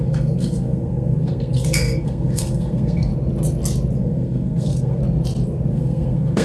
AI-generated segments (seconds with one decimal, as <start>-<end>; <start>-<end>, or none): 0.0-3.1; 4.0-5.0; 5.7-6.4